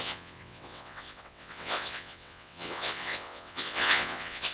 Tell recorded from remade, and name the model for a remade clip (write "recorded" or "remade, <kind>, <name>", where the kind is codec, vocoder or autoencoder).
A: remade, vocoder, WaveNeXt